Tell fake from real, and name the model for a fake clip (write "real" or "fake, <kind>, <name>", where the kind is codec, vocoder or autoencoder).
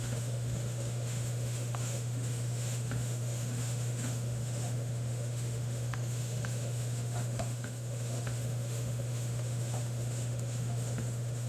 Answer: fake, autoencoder, DAC-VAE